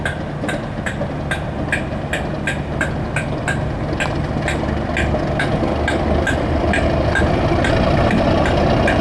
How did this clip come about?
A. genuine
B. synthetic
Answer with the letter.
A